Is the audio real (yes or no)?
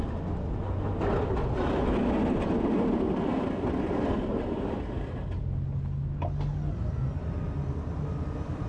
yes